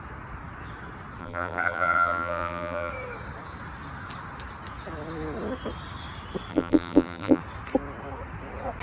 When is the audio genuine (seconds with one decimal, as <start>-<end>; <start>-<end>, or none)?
0.0-1.2; 2.9-6.5; 7.4-8.8